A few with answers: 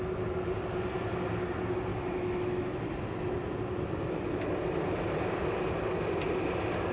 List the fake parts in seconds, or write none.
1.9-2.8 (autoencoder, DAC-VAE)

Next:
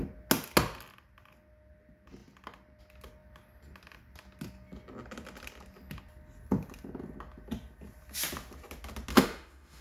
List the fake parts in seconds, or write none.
9.1-9.8 (autoencoder, DAC-VAE)

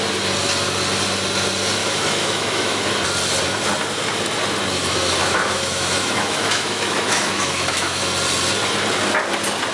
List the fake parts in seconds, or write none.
1.8-2.8 (autoencoder, DAC-VAE); 5.2-8.0

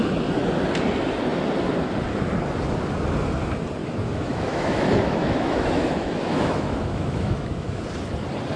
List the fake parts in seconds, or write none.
3.8-7.8 (autoencoder, DAC-VAE)

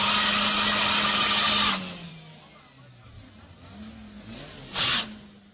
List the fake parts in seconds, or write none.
none